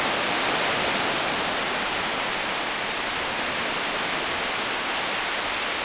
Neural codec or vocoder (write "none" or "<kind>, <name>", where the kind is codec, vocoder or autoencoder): none